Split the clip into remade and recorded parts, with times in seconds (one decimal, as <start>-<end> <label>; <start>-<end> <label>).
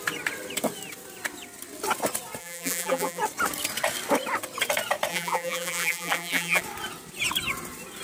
0.0-2.4 recorded; 2.4-3.2 remade; 3.2-5.1 recorded; 5.1-6.6 remade; 6.6-8.0 recorded